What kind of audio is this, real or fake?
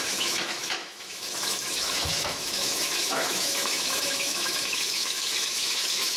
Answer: fake